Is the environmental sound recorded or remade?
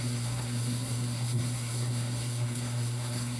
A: remade